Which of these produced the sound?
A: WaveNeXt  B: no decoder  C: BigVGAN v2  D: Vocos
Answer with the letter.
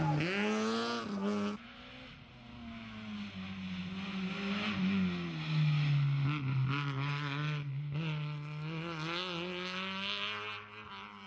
B